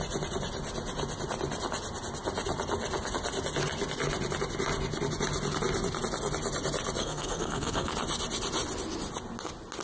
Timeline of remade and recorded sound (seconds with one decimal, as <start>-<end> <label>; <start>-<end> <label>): 0.0-7.0 recorded; 7.0-7.9 remade; 7.9-9.8 recorded